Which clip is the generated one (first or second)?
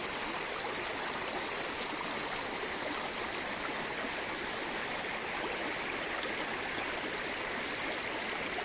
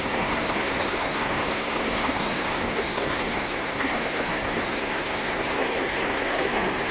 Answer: second